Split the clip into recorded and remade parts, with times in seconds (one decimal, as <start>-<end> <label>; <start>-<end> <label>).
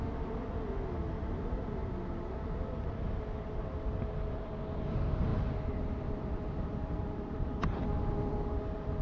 0.0-5.3 recorded; 5.3-7.8 remade; 7.8-9.0 recorded